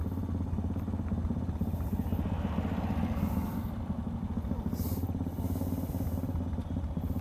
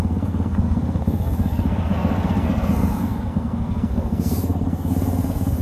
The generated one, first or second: second